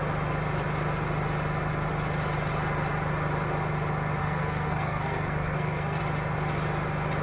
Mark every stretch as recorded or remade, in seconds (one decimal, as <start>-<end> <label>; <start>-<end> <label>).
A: 0.0-4.2 recorded; 4.2-6.0 remade; 6.0-7.2 recorded